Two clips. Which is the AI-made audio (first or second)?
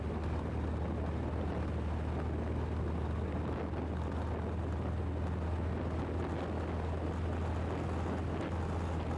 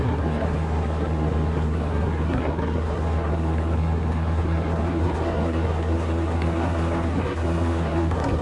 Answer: second